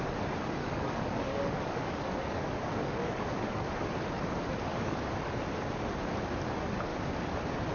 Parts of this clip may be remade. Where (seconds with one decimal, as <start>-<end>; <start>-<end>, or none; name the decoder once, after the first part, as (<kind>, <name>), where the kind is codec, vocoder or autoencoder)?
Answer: 0.6-3.7 (codec, DAC); 4.7-5.3